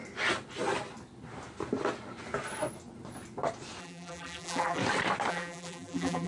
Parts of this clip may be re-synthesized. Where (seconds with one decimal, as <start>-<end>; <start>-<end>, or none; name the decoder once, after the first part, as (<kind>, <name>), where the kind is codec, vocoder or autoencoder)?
3.8-4.8 (vocoder, BigVGAN v2); 5.3-6.3